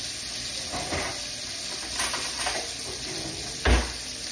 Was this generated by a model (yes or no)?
no